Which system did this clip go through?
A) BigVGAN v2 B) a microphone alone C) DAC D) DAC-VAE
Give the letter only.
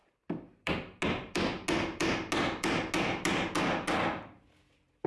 B